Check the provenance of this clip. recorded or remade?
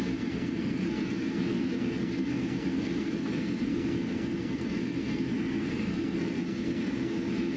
remade